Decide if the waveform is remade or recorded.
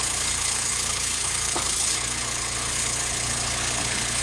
remade